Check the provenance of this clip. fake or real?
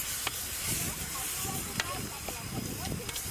real